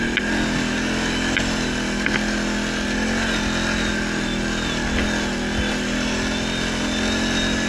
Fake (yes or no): no